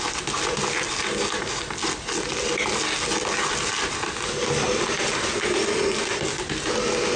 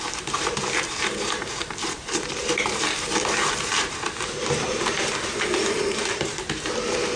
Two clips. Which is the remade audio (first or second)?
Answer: second